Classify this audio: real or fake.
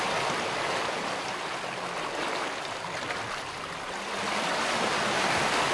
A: real